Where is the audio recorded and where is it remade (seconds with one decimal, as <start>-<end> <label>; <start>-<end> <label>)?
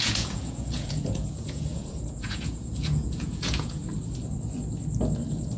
0.0-3.8 remade; 3.8-5.6 recorded